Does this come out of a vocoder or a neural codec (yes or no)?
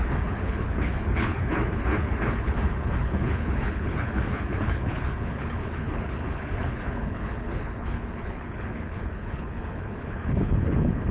yes